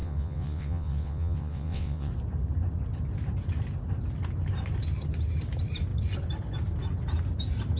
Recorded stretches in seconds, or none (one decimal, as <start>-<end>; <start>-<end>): 2.1-7.8